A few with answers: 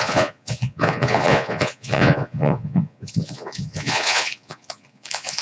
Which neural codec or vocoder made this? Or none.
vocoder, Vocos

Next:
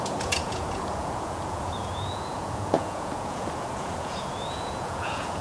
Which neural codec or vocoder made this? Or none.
vocoder, Vocos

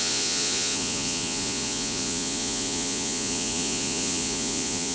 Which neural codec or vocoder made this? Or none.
vocoder, Vocos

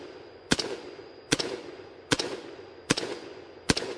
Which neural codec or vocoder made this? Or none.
vocoder, Vocos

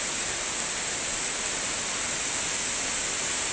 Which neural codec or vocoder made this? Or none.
none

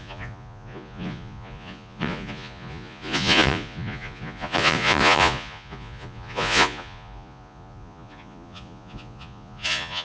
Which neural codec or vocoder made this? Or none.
vocoder, Vocos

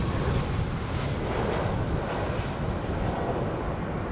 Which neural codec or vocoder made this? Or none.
none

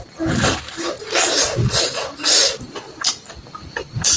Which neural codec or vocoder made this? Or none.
none